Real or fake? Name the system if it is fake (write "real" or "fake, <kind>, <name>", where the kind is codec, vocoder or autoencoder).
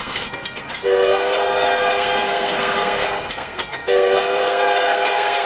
fake, codec, SNAC